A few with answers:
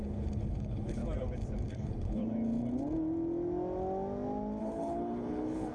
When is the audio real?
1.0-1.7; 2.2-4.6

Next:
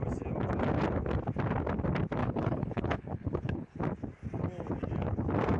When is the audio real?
0.0-2.2; 3.8-5.6

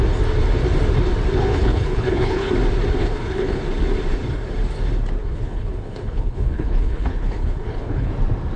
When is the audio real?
0.0-1.5; 2.5-3.0; 3.6-5.2; 8.1-8.6